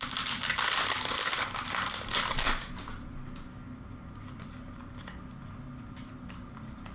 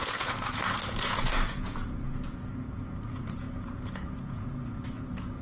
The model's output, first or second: second